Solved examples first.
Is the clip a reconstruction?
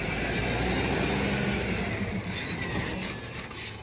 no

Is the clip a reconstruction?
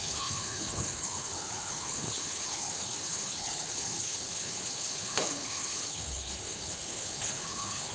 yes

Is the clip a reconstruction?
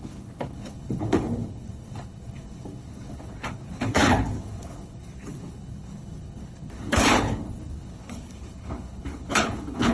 yes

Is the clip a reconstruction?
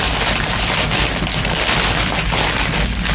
no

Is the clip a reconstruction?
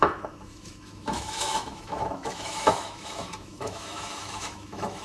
yes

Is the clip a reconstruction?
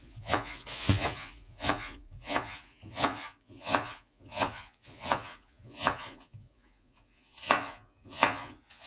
yes